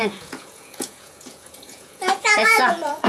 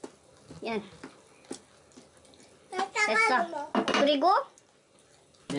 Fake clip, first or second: first